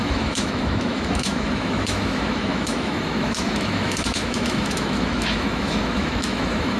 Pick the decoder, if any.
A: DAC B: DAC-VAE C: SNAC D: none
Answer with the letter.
B